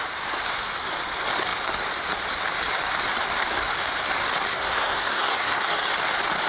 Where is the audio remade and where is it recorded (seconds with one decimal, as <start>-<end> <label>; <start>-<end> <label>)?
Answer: 0.0-4.5 recorded; 4.5-5.7 remade; 5.7-6.5 recorded